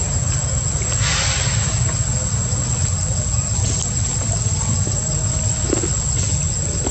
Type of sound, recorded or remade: recorded